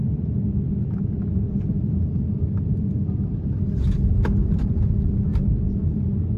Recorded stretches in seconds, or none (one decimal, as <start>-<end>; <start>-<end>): 0.0-6.4